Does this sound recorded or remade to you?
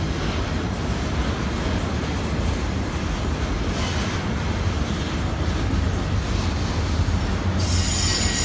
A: recorded